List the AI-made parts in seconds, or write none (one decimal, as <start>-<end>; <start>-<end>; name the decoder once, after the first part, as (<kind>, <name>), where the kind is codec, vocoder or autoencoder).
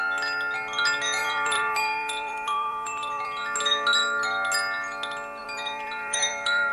1.2-3.4 (vocoder, BigVGAN v2); 5.4-6.7